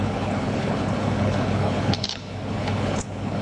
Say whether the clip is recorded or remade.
remade